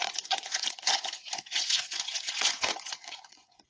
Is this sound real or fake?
fake